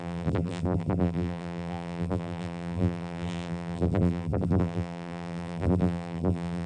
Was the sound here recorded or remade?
remade